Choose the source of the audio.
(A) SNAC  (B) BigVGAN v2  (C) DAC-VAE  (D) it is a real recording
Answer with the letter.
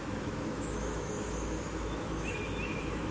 C